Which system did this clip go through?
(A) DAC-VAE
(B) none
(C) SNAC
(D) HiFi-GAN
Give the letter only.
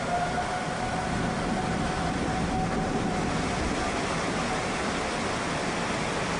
B